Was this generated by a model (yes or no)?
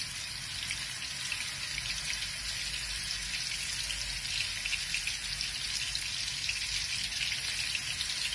no